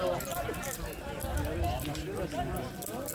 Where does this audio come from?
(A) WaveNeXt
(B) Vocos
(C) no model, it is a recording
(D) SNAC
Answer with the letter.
C